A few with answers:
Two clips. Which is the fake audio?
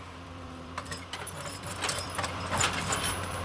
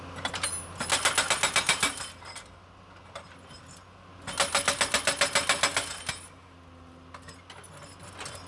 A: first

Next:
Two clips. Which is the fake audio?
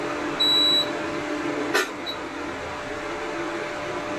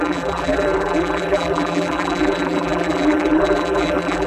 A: second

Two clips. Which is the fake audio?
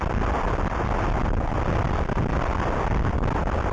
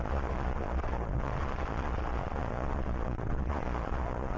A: second